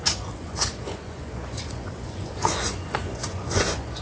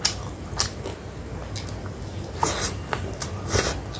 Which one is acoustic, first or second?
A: second